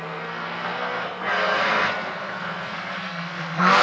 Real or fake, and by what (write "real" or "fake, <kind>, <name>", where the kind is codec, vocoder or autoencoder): fake, codec, SNAC